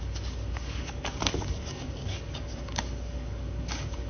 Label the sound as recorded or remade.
remade